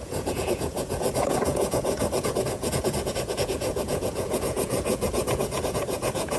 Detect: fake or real fake